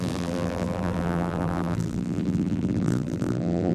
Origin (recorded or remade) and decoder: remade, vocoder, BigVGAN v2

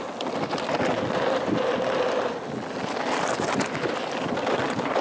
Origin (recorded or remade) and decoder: recorded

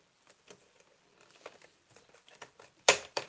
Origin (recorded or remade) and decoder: remade, vocoder, BigVGAN v2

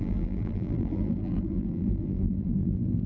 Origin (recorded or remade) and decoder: remade, vocoder, BigVGAN v2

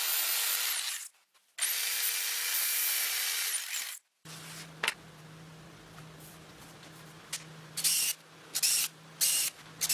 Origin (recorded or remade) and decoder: recorded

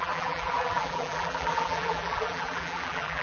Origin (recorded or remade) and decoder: remade, vocoder, BigVGAN v2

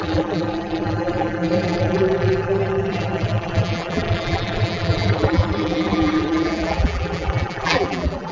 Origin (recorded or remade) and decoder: remade, vocoder, BigVGAN v2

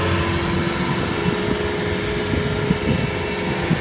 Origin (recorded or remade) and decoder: recorded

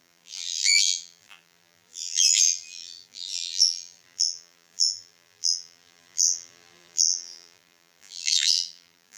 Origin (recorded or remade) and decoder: remade, vocoder, BigVGAN v2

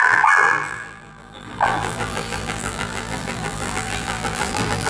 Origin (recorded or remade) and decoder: remade, vocoder, BigVGAN v2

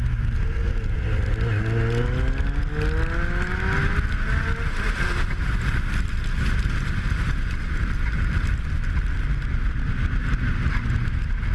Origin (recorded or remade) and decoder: recorded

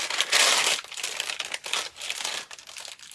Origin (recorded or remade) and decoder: recorded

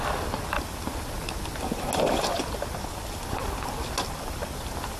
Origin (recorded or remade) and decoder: recorded